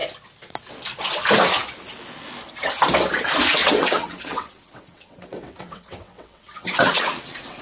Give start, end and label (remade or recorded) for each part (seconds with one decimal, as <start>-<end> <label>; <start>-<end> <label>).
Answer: 0.0-3.6 recorded; 3.6-7.6 remade

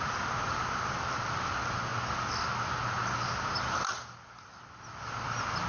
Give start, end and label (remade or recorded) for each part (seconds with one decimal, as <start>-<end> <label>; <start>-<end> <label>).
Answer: 0.0-5.7 recorded

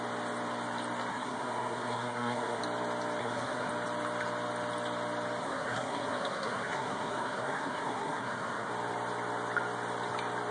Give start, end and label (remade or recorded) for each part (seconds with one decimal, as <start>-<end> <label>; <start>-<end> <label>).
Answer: 0.0-1.1 recorded; 1.1-2.6 remade; 2.6-3.2 recorded; 3.2-3.7 remade; 3.7-5.4 recorded; 5.4-8.7 remade; 8.7-10.5 recorded